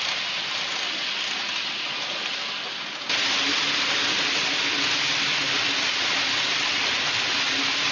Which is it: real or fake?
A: real